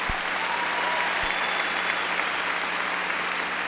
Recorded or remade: recorded